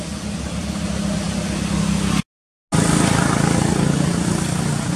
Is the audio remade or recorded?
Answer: recorded